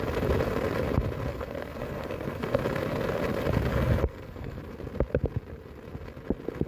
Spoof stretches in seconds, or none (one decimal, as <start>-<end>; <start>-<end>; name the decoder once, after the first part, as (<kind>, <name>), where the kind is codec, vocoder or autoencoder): 1.3-2.6 (codec, SNAC); 3.7-4.6